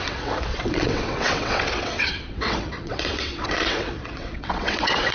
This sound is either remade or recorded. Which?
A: remade